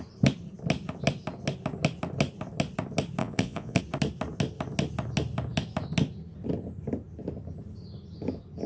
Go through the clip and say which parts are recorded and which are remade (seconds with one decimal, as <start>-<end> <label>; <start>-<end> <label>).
0.0-3.2 recorded; 3.2-3.8 remade; 3.8-8.7 recorded